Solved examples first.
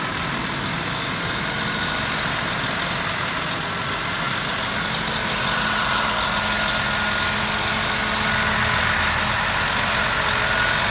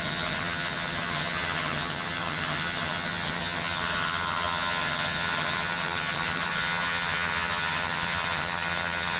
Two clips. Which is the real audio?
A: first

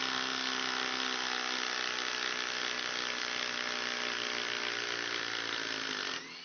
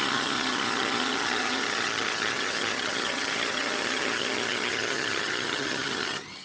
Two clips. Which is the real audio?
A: first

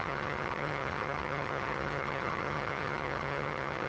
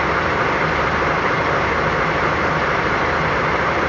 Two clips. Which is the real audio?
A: second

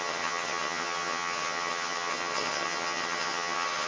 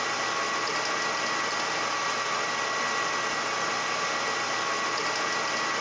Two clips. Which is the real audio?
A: second